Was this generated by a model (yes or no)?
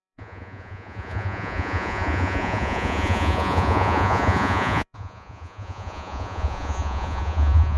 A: yes